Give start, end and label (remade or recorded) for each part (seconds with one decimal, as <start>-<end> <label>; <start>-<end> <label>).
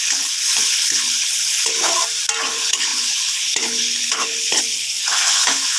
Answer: 0.0-1.9 remade; 1.9-2.5 recorded; 2.5-5.8 remade